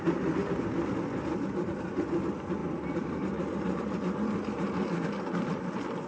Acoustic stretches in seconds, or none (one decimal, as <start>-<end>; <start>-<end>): 0.0-2.6; 3.8-6.1